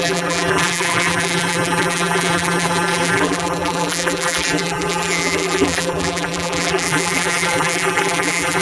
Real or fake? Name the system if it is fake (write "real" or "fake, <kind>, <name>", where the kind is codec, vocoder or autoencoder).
fake, vocoder, BigVGAN v2